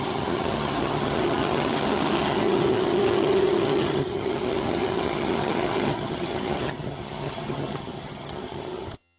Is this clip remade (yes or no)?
yes